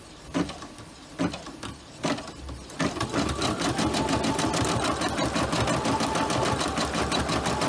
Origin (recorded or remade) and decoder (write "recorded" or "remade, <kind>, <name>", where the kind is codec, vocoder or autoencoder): recorded